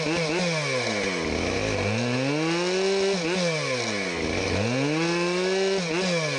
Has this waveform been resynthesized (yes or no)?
no